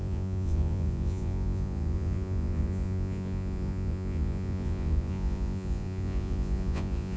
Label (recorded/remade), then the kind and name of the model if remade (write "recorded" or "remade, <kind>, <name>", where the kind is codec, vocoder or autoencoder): remade, vocoder, Vocos